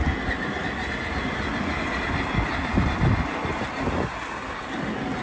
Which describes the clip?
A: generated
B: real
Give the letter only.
B